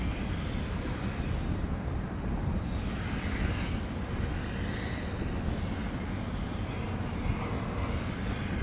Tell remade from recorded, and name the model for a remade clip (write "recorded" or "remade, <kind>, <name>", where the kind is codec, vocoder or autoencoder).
recorded